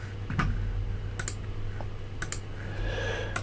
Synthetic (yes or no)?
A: no